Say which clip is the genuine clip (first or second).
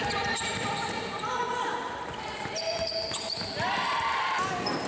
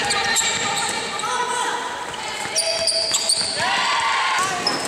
second